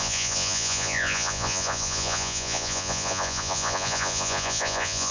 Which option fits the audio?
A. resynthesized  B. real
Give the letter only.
A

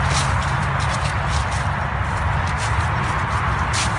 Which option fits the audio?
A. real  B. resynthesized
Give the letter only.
A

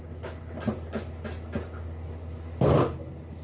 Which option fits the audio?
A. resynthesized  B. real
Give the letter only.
B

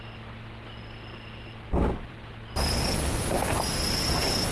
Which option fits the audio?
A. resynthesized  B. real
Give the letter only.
A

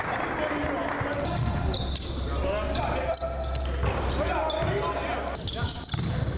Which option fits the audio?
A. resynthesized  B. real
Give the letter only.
B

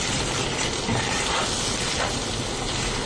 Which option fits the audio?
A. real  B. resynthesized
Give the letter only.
A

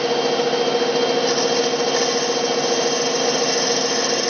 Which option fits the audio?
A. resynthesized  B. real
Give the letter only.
B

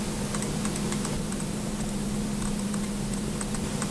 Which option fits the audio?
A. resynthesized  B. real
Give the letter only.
B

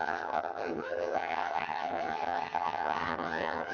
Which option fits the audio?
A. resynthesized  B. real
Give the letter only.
A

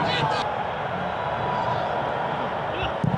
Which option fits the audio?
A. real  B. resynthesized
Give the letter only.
A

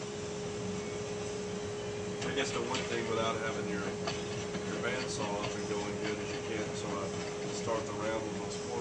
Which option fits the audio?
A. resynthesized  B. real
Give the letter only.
B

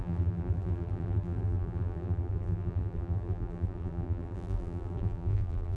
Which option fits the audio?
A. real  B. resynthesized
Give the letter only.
B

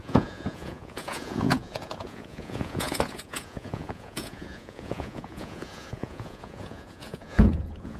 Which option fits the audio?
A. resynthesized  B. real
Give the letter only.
A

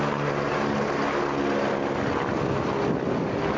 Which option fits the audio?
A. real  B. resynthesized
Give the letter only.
A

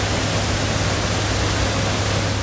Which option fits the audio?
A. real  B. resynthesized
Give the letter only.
A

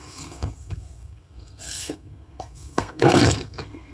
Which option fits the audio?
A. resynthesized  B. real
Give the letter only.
A